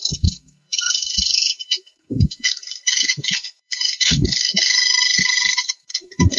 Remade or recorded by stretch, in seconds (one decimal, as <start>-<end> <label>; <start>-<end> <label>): 0.0-6.4 remade